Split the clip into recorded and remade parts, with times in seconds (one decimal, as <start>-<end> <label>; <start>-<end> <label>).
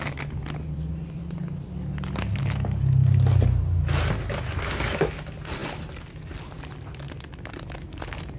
0.0-8.4 recorded